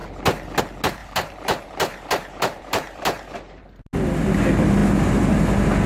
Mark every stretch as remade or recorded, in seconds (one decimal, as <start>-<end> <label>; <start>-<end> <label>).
0.0-1.0 recorded; 1.0-3.6 remade; 3.6-5.9 recorded